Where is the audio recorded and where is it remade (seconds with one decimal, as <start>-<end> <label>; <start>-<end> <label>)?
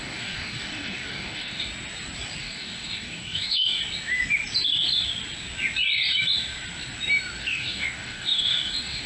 0.0-1.7 remade; 1.7-2.4 recorded; 2.4-3.8 remade; 3.8-7.4 recorded; 7.4-9.1 remade